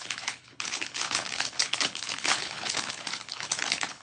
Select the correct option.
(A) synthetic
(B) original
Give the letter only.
A